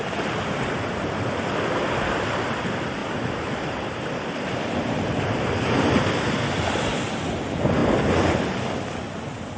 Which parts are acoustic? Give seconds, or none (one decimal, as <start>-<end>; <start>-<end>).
0.0-3.0; 5.9-9.6